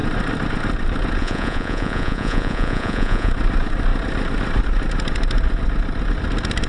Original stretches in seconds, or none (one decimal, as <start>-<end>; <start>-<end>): 0.0-1.2; 3.3-6.7